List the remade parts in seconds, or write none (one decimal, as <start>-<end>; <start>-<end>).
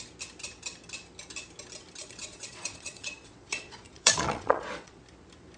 2.0-5.0